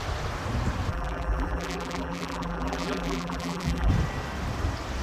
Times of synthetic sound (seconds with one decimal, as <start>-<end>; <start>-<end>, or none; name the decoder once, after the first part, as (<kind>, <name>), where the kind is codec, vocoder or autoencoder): 0.9-3.9 (vocoder, BigVGAN v2)